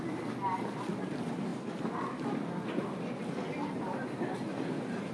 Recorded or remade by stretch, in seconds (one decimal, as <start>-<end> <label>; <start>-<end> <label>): 0.0-5.1 recorded